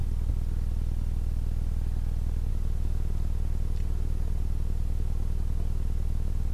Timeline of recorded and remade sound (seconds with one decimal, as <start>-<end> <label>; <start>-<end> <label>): 0.0-6.5 recorded